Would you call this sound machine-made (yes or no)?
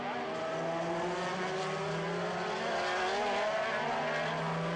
no